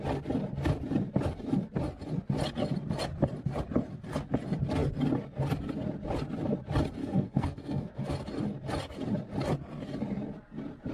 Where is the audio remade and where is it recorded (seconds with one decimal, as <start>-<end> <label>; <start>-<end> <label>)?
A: 0.0-7.0 recorded; 7.0-8.1 remade; 8.1-10.9 recorded